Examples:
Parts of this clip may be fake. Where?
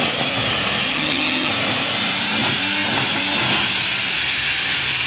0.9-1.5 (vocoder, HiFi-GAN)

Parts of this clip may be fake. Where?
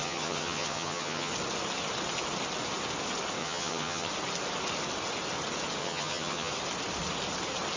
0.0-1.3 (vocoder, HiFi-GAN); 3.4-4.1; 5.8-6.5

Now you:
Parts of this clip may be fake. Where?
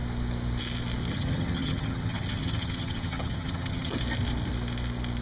1.1-4.0 (vocoder, HiFi-GAN)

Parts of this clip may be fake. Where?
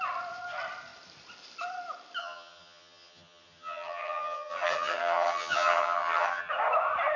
2.2-6.5 (vocoder, HiFi-GAN)